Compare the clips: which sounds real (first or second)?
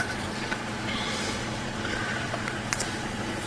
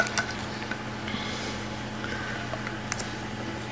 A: second